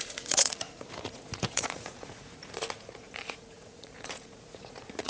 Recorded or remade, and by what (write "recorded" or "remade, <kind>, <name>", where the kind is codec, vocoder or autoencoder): remade, vocoder, Vocos